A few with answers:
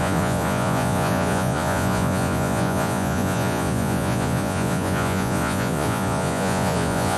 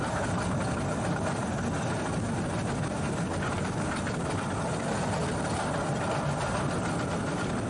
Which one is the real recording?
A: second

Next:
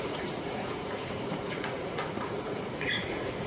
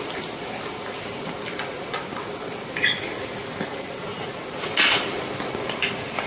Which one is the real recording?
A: second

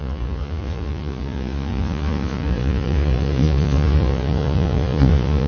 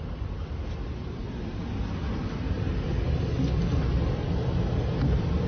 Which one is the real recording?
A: second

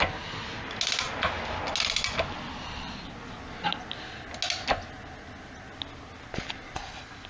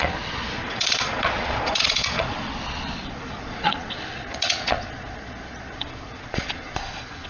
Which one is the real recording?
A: first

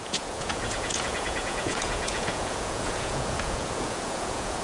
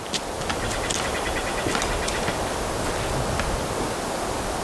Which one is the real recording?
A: second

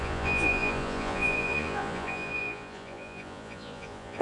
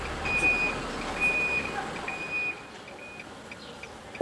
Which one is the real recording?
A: second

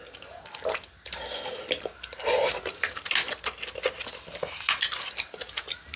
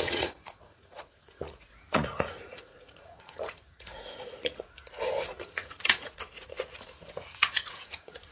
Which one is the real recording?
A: first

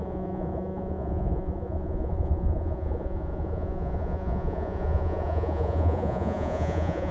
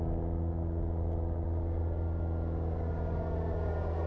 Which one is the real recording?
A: second